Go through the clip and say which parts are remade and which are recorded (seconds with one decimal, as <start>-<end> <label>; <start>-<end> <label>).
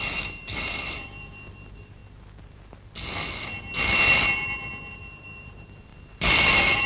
0.0-2.0 remade; 2.0-4.9 recorded; 4.9-6.9 remade